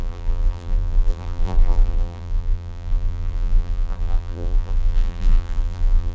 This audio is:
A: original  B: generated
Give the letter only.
B